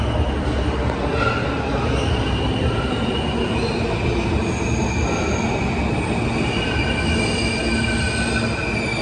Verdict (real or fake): real